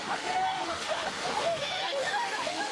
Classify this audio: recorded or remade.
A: remade